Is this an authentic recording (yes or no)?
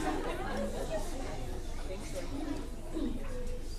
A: yes